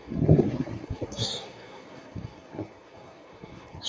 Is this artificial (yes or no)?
yes